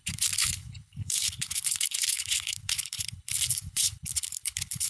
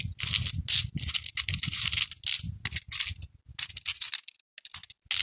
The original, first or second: second